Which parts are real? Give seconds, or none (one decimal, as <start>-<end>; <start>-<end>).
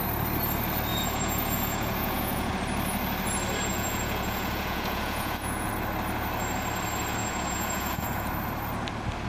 0.0-0.9; 2.5-3.7; 5.7-7.2; 8.3-9.3